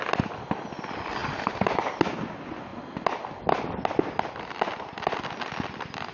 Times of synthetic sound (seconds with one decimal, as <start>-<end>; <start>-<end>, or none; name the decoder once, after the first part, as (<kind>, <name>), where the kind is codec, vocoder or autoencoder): 1.2-1.7 (vocoder, BigVGAN v2)